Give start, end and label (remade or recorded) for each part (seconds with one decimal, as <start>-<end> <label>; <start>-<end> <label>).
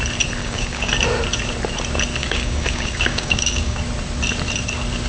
0.0-0.4 recorded; 0.4-0.9 remade; 0.9-2.2 recorded; 2.2-3.8 remade; 3.8-5.1 recorded